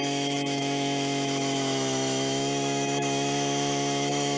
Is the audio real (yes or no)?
no